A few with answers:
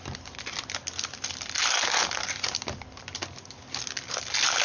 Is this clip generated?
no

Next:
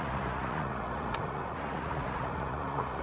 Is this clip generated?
yes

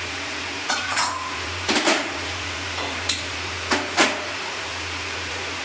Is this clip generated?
yes